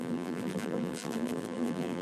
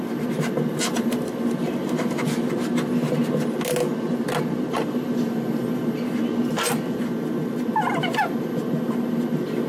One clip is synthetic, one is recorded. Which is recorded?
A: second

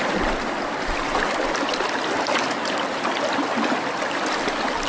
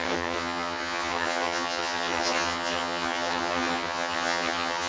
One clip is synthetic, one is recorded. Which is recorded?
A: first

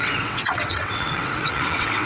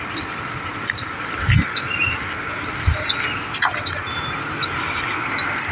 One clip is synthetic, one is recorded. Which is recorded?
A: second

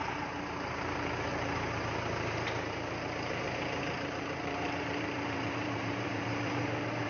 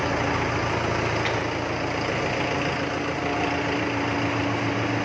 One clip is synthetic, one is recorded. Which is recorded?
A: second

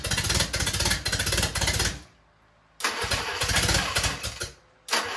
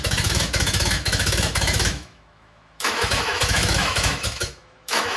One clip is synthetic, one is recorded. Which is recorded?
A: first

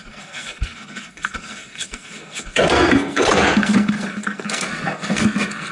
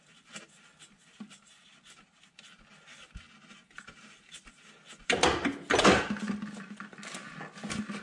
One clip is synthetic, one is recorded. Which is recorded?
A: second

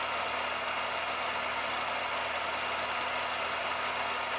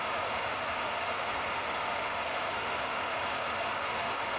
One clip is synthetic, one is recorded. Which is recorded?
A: first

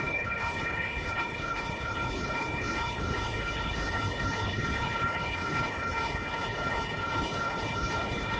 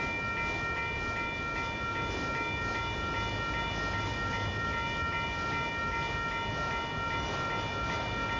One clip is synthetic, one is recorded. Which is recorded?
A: second